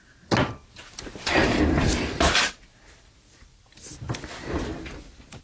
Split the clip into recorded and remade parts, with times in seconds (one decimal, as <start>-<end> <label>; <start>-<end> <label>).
0.0-5.4 recorded